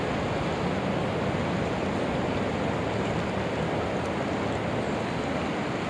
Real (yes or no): yes